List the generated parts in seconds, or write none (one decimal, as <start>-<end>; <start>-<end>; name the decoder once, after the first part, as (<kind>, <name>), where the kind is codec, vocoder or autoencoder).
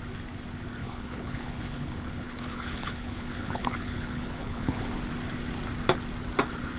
0.8-4.9 (codec, HILCodec)